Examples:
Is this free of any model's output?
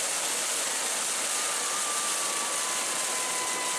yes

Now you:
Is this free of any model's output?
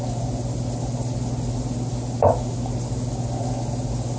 yes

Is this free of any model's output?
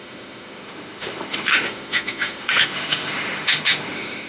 no